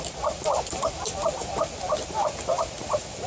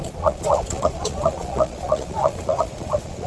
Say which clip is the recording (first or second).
first